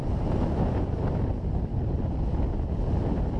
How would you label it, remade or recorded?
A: recorded